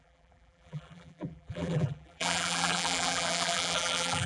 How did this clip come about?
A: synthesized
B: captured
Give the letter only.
A